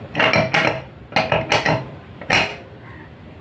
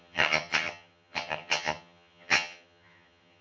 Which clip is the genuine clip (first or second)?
first